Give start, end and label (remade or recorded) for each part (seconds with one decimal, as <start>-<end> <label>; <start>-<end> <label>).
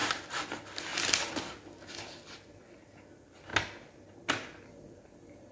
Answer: 0.0-5.5 recorded